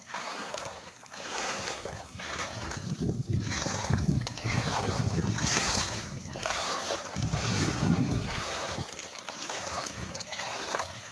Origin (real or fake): fake